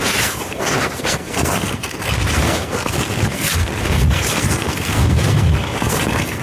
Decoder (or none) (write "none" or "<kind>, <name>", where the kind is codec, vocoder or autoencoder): codec, SNAC